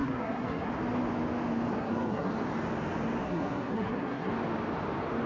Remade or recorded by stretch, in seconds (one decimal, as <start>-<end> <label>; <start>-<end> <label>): 0.0-0.7 remade; 0.7-1.7 recorded; 1.7-2.3 remade; 2.3-3.2 recorded; 3.2-4.3 remade; 4.3-5.3 recorded